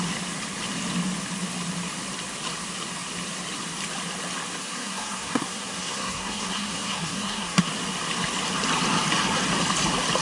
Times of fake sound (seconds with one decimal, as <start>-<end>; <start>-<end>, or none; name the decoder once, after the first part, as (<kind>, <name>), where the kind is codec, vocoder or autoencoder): 4.6-7.7 (codec, SNAC)